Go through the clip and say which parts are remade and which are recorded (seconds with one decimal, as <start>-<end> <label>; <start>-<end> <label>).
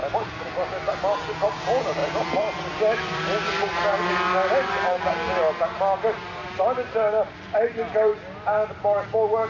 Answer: 0.0-2.0 recorded; 2.0-4.7 remade; 4.7-8.1 recorded; 8.1-9.1 remade; 9.1-9.5 recorded